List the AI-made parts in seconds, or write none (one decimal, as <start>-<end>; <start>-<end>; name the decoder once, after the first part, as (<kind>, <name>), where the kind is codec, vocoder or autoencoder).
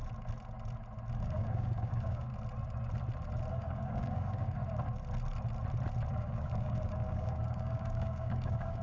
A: 1.2-2.3 (codec, DAC); 3.5-4.6; 6.1-8.8